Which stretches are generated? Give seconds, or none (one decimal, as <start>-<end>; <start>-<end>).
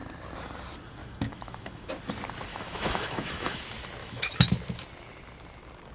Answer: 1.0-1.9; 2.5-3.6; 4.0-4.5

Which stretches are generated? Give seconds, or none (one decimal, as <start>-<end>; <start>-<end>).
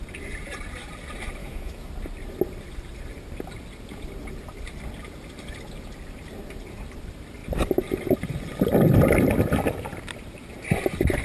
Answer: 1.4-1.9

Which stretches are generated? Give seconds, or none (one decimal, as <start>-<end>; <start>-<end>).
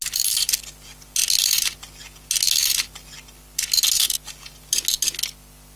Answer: none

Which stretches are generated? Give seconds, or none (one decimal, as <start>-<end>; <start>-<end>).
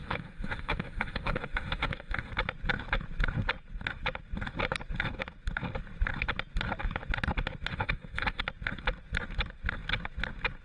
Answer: 0.0-2.3; 7.7-8.4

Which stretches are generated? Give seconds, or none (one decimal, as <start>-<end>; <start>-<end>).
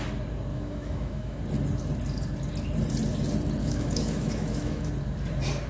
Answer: 0.5-1.4; 3.6-4.9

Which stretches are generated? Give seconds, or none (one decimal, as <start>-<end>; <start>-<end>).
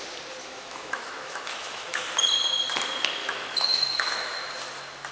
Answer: 0.4-2.0; 3.2-4.5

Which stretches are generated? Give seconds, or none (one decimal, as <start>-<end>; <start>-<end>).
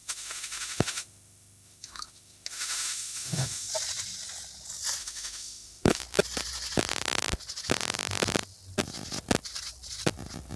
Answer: 0.0-3.7; 5.0-6.0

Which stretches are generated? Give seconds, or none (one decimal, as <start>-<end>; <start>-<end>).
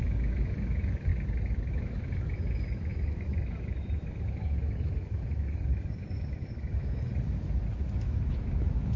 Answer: 0.0-1.1; 1.7-7.1; 7.9-9.0